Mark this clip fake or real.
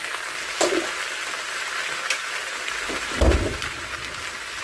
real